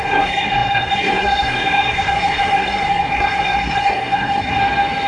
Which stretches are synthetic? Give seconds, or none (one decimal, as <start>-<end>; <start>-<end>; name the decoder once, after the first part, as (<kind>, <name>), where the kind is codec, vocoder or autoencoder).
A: 0.0-4.6 (codec, SNAC)